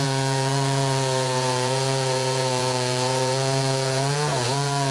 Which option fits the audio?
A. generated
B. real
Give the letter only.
A